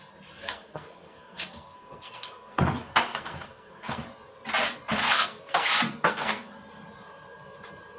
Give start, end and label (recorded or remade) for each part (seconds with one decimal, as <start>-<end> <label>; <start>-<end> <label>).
0.0-0.4 recorded; 0.4-4.0 remade; 4.0-5.0 recorded; 5.0-6.5 remade; 6.5-8.0 recorded